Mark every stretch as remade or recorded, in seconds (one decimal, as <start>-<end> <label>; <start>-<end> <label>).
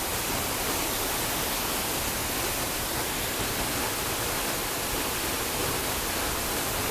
0.0-6.9 recorded